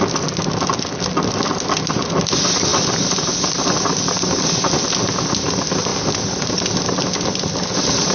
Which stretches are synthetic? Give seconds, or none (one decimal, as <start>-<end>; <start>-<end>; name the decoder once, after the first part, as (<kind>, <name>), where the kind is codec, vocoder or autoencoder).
none